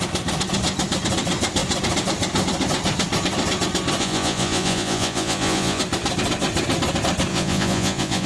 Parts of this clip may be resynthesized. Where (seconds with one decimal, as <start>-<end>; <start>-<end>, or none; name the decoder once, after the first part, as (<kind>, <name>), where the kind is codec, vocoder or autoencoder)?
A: 4.0-5.8 (vocoder, Vocos); 7.3-8.3